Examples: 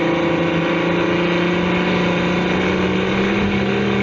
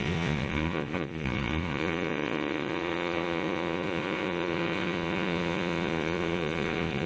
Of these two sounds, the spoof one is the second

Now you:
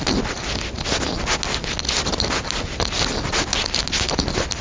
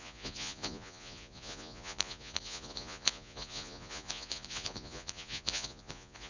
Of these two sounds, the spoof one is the second